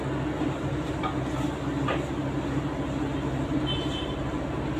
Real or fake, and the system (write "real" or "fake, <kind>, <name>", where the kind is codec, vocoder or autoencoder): real